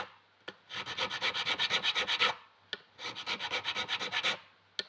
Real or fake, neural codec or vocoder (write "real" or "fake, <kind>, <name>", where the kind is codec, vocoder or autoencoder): real